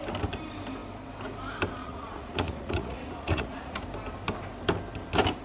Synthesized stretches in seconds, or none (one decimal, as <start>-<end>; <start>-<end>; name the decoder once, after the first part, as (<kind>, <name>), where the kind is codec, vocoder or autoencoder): 1.8-3.8 (vocoder, Vocos)